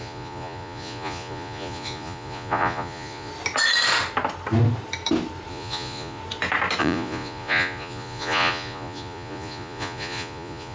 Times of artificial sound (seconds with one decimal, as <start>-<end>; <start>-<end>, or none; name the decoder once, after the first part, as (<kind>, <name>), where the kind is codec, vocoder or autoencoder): 0.0-3.3 (vocoder, Vocos); 5.5-6.2; 6.8-10.7